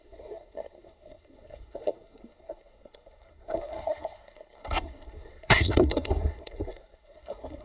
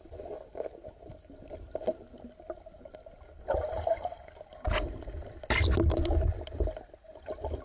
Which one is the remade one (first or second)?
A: first